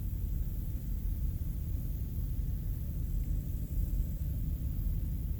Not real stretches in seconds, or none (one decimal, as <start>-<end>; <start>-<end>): 0.5-2.3; 3.5-4.2